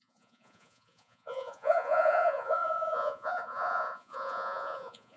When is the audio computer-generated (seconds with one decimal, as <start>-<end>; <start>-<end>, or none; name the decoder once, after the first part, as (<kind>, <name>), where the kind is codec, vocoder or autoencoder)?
0.0-5.2 (vocoder, Vocos)